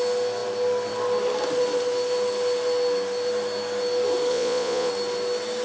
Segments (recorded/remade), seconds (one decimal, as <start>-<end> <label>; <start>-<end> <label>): 0.0-4.3 recorded; 4.3-4.9 remade; 4.9-5.6 recorded